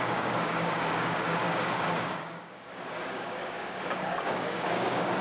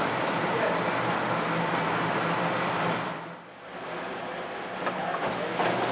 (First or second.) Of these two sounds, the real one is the second